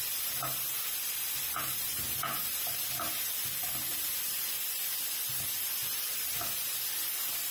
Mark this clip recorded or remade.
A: recorded